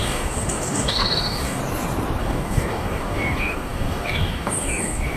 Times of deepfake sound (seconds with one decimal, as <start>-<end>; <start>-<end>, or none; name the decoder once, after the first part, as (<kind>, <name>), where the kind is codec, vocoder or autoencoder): 0.0-1.6 (codec, DAC); 2.2-5.2